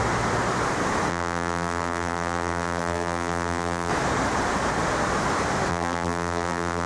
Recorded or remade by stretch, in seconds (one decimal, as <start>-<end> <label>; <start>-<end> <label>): 0.0-1.1 recorded; 1.1-3.9 remade; 3.9-5.7 recorded; 5.7-6.9 remade